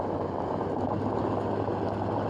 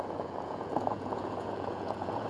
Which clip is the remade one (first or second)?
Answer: second